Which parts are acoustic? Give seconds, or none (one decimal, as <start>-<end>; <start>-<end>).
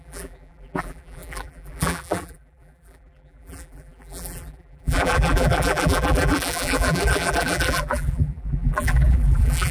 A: none